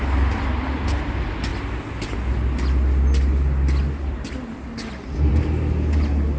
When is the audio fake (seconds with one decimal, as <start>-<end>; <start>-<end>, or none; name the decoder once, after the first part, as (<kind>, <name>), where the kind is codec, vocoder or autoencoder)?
none